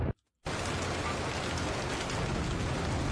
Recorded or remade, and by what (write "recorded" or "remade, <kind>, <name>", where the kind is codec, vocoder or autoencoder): recorded